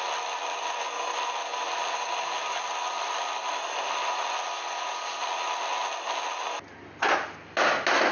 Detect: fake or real real